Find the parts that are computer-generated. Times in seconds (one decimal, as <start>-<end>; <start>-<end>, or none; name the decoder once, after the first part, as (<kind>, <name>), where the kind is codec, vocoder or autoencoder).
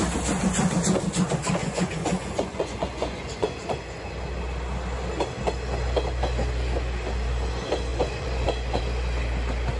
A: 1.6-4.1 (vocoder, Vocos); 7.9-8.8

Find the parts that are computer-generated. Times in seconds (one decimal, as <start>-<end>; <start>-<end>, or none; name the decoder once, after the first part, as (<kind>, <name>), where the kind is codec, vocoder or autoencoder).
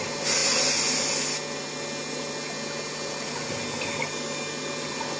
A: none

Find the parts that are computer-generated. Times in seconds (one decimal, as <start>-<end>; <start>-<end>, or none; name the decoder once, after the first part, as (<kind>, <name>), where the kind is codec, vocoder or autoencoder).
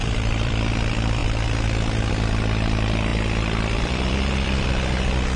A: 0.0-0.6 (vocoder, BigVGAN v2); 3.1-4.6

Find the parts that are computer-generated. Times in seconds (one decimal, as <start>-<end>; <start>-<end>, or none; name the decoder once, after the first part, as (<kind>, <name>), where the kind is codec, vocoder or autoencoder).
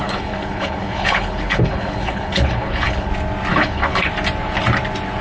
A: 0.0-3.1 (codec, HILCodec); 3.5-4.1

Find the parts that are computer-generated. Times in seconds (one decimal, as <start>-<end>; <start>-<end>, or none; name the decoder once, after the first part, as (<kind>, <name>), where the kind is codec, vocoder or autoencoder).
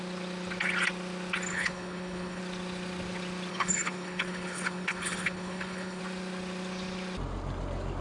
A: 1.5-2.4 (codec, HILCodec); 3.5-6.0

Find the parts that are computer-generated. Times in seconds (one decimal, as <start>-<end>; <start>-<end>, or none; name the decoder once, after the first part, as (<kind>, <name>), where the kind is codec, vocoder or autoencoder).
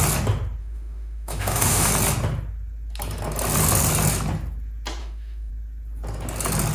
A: 0.6-1.9 (autoencoder, DAC-VAE); 5.0-5.5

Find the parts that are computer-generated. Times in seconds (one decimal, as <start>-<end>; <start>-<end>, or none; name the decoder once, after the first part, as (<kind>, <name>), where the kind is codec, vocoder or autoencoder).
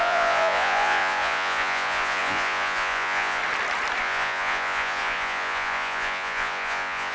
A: 0.0-3.4 (vocoder, Vocos); 4.0-7.1